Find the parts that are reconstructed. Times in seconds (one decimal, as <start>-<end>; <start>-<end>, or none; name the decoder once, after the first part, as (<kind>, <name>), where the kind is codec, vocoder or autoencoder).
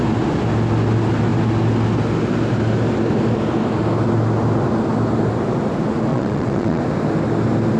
6.1-6.8 (vocoder, WaveNeXt)